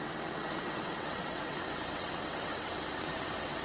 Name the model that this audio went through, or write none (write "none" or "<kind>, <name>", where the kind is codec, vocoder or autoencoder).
vocoder, WaveNeXt